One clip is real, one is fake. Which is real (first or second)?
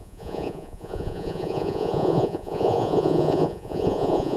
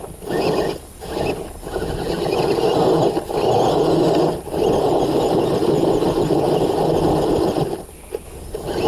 second